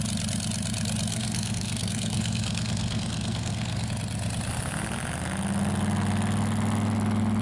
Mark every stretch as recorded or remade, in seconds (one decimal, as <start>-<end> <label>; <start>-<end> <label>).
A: 0.0-1.1 recorded; 1.1-3.9 remade; 3.9-7.4 recorded